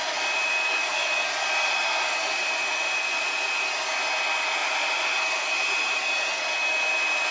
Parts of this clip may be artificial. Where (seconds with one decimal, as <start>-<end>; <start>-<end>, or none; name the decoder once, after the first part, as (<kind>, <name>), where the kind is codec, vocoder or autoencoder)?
0.0-3.0 (vocoder, BigVGAN v2); 4.6-6.0